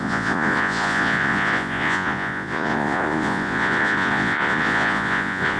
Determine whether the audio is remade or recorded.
remade